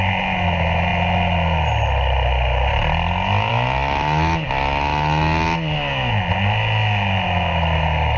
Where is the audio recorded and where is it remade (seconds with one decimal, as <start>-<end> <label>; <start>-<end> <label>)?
0.0-8.2 recorded